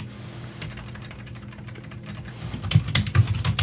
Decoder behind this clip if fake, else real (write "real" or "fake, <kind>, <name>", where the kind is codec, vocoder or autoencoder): real